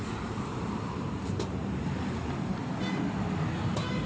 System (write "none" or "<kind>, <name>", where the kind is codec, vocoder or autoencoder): vocoder, BigVGAN v2